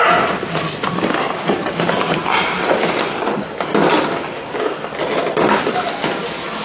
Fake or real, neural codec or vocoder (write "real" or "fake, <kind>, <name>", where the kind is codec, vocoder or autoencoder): real